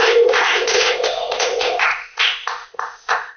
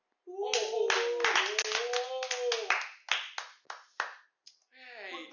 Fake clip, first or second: first